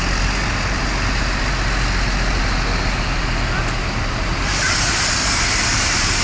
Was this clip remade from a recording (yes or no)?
no